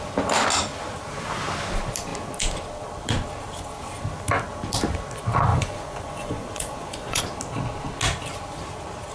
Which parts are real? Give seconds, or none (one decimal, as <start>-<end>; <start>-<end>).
0.0-5.5; 7.2-9.1